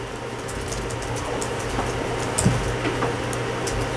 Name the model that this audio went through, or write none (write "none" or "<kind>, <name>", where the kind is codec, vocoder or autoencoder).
none